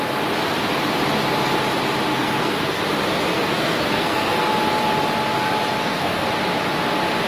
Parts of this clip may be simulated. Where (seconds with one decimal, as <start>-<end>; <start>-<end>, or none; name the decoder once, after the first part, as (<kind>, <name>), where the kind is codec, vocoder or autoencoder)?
2.1-2.8 (codec, SNAC); 3.3-4.5; 5.8-6.3